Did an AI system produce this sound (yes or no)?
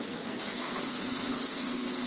yes